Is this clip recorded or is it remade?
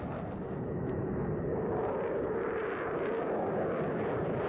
recorded